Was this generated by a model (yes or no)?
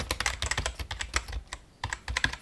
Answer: no